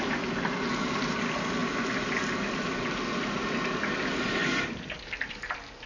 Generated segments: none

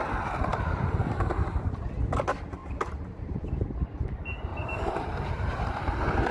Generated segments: 2.6-3.2; 4.5-5.6

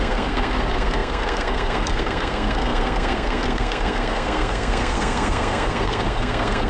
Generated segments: 0.0-6.7

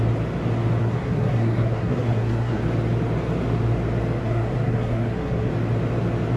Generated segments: 0.8-2.6; 4.2-5.5